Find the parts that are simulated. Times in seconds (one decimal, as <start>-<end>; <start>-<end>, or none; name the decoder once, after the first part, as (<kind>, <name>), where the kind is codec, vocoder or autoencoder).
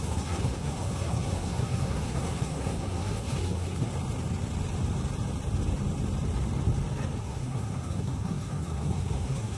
0.0-3.9 (codec, SNAC); 7.2-9.6